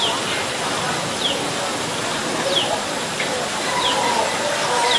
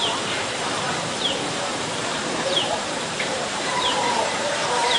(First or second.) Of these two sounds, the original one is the first